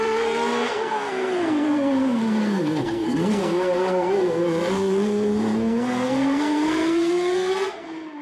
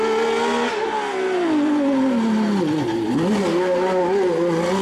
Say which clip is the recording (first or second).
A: second